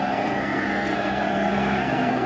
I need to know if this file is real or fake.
fake